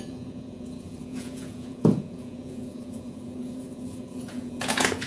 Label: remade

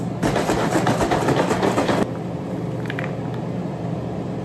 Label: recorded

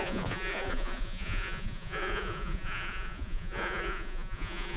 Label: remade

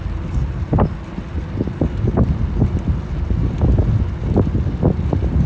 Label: recorded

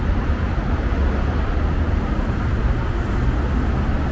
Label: recorded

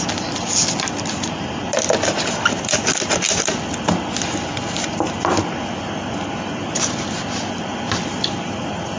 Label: recorded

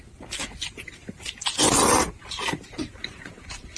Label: recorded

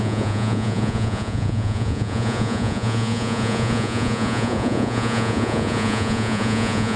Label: remade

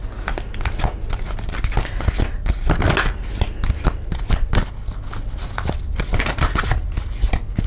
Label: recorded